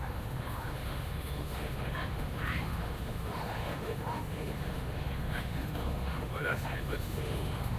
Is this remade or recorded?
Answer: remade